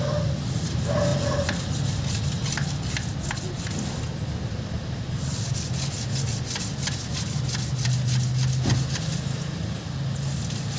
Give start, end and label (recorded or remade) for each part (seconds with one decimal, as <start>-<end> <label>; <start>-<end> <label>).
0.0-1.1 recorded; 1.1-1.7 remade; 1.7-10.8 recorded